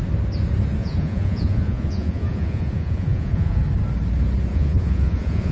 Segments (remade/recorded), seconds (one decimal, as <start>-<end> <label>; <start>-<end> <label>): 0.0-0.8 recorded; 0.8-3.6 remade; 3.6-4.5 recorded; 4.5-5.5 remade